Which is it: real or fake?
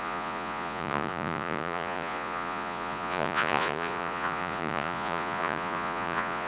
fake